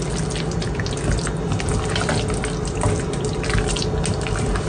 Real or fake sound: real